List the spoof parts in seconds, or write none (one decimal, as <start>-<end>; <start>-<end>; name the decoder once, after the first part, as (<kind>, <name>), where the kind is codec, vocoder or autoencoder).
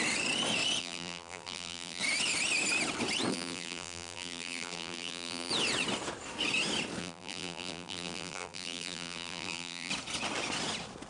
0.8-2.0 (vocoder, BigVGAN v2); 3.3-5.5; 7.0-9.9